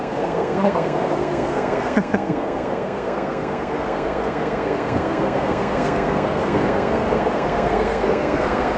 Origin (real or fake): fake